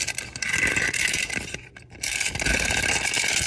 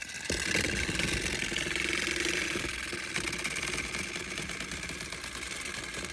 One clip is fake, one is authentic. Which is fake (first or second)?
first